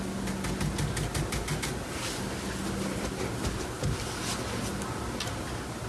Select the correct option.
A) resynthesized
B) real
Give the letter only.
B